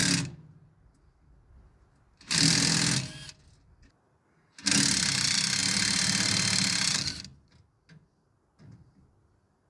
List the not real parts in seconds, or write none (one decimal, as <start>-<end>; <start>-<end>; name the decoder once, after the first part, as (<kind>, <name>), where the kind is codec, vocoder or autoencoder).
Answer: none